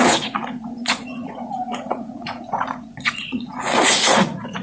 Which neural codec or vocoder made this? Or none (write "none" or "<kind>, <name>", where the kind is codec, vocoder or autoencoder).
vocoder, Vocos